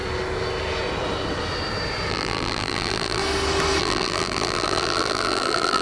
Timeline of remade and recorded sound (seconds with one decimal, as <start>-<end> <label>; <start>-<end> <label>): 0.0-2.1 recorded; 2.1-3.2 remade; 3.2-3.8 recorded; 3.8-5.8 remade